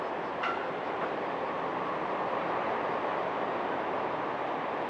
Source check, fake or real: real